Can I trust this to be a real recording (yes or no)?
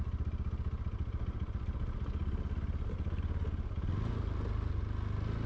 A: yes